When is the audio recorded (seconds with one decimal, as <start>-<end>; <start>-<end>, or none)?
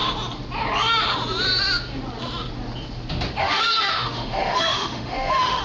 0.0-3.4